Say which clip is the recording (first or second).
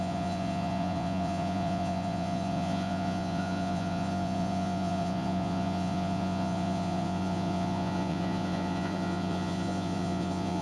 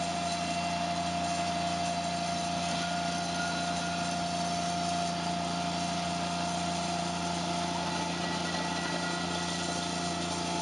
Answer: second